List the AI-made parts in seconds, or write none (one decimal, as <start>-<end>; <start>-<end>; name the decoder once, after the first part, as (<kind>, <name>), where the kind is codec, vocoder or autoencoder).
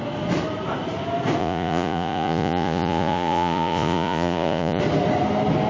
1.4-4.8 (vocoder, Vocos)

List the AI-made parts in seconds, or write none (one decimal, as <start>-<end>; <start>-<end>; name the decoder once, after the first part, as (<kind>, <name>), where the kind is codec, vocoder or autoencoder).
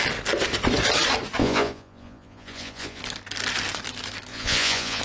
1.4-3.0 (vocoder, Vocos); 4.3-5.0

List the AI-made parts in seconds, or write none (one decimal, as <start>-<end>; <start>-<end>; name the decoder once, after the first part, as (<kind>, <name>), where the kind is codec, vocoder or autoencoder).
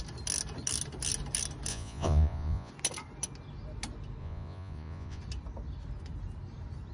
1.7-2.7 (vocoder, Vocos); 4.2-5.2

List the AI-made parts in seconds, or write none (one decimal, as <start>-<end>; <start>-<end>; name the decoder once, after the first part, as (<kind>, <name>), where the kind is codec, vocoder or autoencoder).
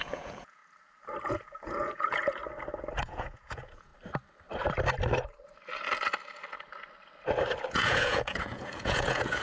0.0-0.6 (vocoder, Vocos); 1.2-2.4; 3.0-3.9; 7.7-9.4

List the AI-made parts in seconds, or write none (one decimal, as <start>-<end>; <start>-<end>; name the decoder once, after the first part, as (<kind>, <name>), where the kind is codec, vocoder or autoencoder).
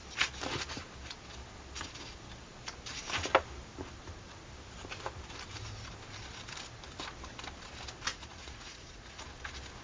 8.1-9.2 (vocoder, Vocos)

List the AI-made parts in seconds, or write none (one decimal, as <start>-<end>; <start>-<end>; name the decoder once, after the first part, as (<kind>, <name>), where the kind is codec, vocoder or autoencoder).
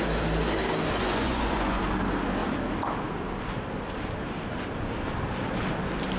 1.0-1.8 (vocoder, Vocos)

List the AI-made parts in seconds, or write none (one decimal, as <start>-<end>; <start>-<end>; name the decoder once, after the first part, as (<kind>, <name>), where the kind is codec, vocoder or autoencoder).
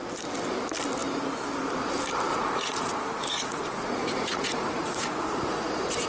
2.3-6.1 (vocoder, Vocos)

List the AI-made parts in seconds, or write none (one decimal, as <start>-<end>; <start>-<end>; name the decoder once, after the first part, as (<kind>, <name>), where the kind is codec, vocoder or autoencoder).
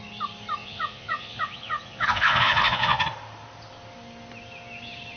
0.6-3.0 (vocoder, Vocos)